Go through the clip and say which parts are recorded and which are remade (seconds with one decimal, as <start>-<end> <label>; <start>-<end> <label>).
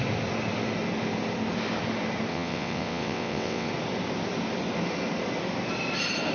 0.0-2.3 recorded; 2.3-3.7 remade; 3.7-6.3 recorded